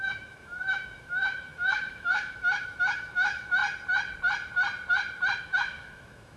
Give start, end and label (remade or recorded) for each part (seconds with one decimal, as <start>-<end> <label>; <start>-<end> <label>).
0.0-3.6 remade; 3.6-5.4 recorded; 5.4-6.4 remade